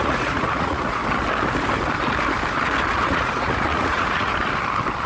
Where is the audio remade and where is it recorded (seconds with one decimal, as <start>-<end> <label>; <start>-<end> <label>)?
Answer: 0.0-1.0 remade; 1.0-2.9 recorded; 2.9-4.3 remade; 4.3-5.1 recorded